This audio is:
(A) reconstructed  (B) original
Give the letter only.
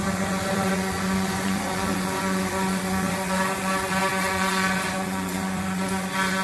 A